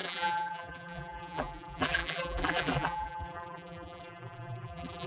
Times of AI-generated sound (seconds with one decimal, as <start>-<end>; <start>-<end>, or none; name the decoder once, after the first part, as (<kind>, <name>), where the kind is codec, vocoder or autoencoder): 0.0-5.1 (vocoder, BigVGAN v2)